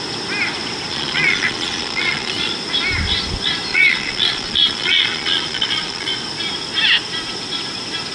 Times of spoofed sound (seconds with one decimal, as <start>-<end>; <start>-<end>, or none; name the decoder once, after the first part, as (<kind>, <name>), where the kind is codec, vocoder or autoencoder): 0.9-2.5 (vocoder, Vocos); 3.7-6.1